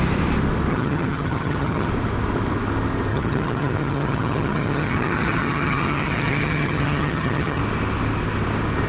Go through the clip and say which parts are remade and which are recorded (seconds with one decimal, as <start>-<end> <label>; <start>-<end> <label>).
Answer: 0.0-0.7 recorded; 0.7-1.9 remade; 1.9-3.1 recorded; 3.1-7.6 remade; 7.6-8.9 recorded